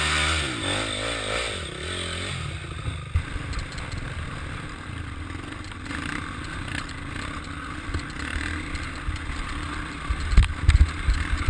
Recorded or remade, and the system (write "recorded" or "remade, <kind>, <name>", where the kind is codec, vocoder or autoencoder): recorded